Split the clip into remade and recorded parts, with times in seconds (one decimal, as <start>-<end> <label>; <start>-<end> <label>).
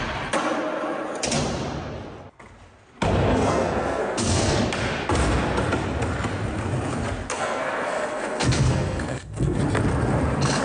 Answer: 0.0-3.3 recorded; 3.3-4.6 remade; 4.6-7.3 recorded; 7.3-9.6 remade; 9.6-10.6 recorded